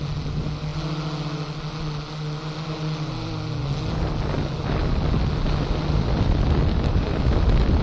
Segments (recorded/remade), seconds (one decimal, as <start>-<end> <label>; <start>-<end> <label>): 0.0-7.8 recorded

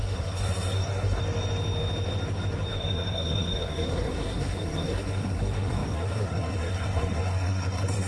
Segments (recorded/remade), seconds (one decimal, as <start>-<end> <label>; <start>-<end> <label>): 0.0-1.2 remade; 1.2-2.7 recorded; 2.7-8.1 remade

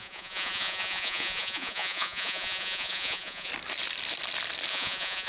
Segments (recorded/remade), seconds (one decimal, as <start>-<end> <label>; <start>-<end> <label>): 0.0-3.5 remade; 3.5-4.7 recorded; 4.7-5.3 remade

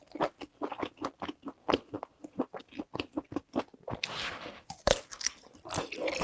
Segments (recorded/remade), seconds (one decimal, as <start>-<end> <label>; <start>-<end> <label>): 0.0-1.6 recorded; 1.6-2.6 remade; 2.6-6.2 recorded

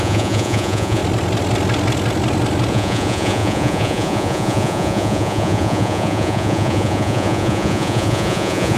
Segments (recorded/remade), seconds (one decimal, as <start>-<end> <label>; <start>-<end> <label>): 0.0-1.0 remade; 1.0-2.7 recorded; 2.7-8.8 remade

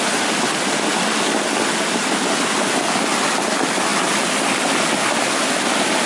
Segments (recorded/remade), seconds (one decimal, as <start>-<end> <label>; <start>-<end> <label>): 0.0-6.1 recorded

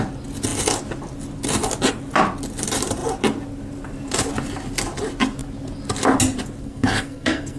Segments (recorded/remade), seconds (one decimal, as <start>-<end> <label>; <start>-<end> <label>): 0.0-6.6 recorded; 6.6-7.6 remade